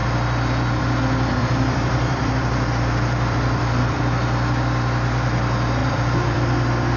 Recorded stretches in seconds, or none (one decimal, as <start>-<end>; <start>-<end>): 0.0-1.4; 4.0-5.8